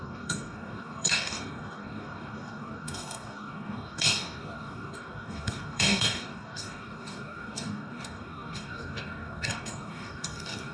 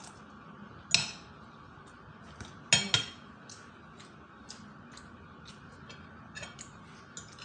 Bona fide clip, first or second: second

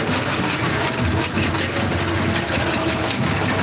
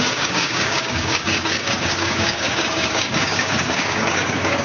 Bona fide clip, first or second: first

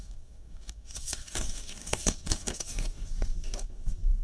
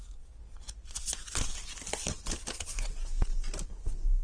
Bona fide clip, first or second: second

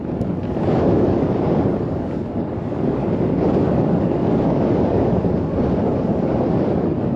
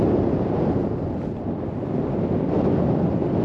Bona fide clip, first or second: second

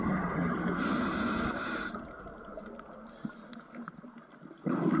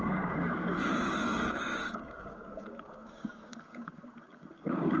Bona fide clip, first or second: first